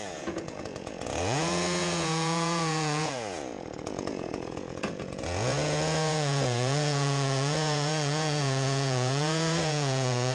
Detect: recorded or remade remade